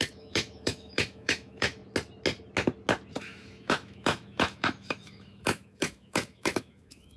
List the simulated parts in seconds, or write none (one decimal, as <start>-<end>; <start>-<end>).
0.0-1.8; 3.2-7.2